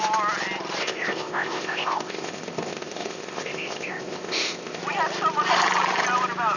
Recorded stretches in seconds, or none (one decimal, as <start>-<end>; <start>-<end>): 0.0-0.8; 4.8-6.6

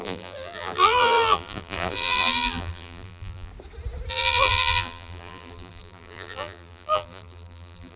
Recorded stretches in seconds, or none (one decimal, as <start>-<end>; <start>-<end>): 3.5-4.1

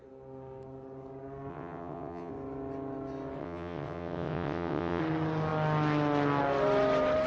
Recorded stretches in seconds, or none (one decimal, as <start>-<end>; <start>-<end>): 0.0-1.5; 2.3-3.4; 5.0-7.3

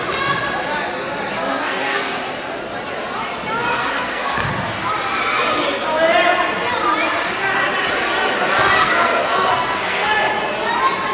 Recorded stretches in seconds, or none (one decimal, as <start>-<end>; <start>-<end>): 0.0-1.5; 2.2-3.7; 4.5-8.8; 10.1-11.1

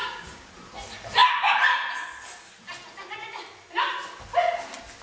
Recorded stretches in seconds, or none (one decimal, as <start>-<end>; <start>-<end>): 0.5-5.0

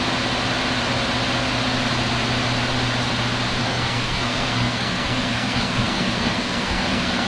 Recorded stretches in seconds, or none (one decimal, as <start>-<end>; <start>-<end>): 0.0-3.6

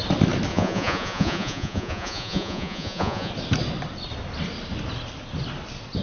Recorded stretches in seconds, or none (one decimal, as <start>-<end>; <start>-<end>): 0.0-0.5; 3.3-6.0

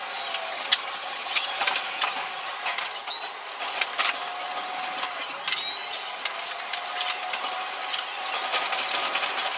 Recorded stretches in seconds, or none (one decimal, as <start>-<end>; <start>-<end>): 0.0-0.5; 1.5-9.6